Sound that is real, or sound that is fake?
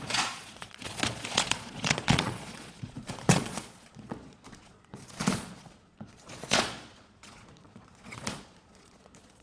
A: fake